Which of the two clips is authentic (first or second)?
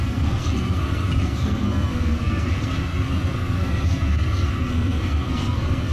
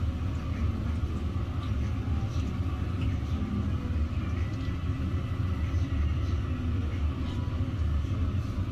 second